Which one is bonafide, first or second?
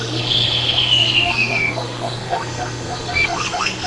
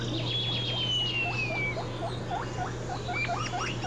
second